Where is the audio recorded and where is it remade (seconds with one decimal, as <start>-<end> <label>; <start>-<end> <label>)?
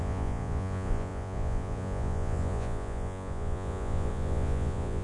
0.0-5.0 remade